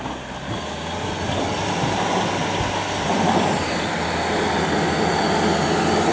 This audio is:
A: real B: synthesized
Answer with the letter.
A